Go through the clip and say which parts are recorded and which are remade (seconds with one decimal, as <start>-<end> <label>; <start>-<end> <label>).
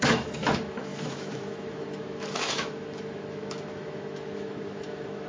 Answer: 0.0-5.3 remade